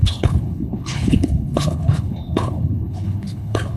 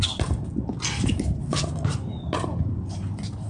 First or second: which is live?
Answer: second